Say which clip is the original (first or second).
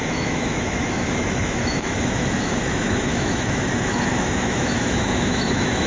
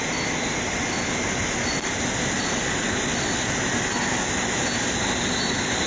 second